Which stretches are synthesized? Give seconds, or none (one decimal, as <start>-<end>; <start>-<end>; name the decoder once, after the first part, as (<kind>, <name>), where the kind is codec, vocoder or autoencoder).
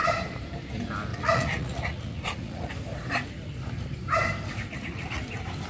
1.1-2.7 (vocoder, Vocos); 4.7-5.2